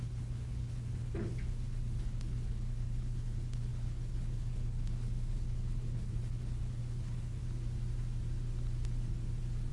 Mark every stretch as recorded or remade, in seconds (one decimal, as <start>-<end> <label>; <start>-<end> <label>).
0.0-7.4 remade; 7.4-9.7 recorded